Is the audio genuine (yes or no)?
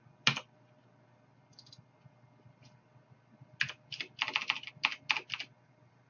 yes